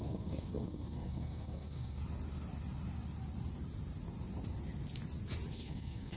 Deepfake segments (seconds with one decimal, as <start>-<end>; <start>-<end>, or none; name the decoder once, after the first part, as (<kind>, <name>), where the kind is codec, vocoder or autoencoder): 0.0-2.0 (codec, SNAC); 5.5-6.2